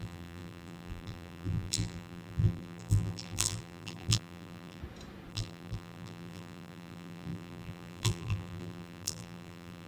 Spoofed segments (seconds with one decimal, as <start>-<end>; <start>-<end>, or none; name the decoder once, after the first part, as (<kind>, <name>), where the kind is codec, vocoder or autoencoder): 0.0-4.8 (vocoder, BigVGAN v2); 5.3-9.9